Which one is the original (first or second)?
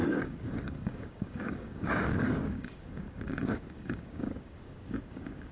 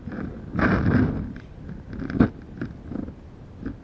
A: second